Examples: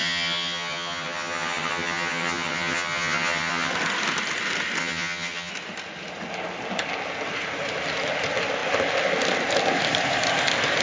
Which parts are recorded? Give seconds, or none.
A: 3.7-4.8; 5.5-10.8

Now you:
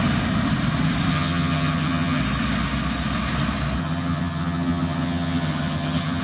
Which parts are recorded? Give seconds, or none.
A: 0.0-1.1; 2.2-3.8

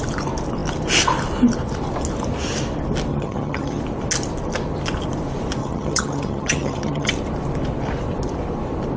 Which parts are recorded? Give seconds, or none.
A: 0.0-3.1; 3.8-5.6; 7.1-9.0

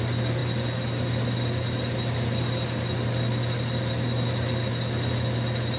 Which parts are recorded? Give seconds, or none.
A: 0.0-5.8